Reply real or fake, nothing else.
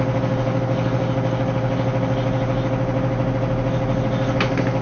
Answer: real